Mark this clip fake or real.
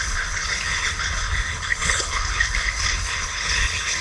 fake